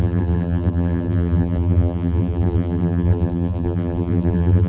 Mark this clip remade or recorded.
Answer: remade